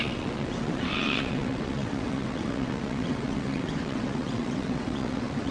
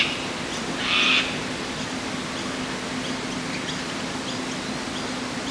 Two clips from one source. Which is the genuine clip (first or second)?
second